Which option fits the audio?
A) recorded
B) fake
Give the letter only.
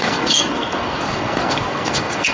B